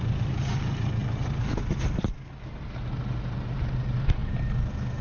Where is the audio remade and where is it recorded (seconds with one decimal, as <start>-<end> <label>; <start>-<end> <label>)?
0.0-5.0 recorded